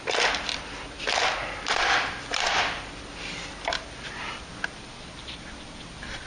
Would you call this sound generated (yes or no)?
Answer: no